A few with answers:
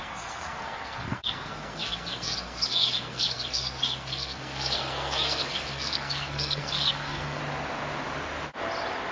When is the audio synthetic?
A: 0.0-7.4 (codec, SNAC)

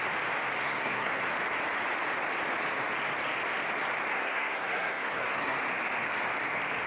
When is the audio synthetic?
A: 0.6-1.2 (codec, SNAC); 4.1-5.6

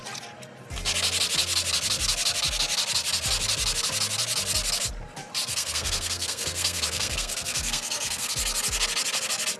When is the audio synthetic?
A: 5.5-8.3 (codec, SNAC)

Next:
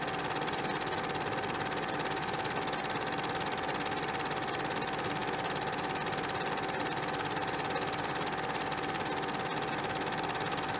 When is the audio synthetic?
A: none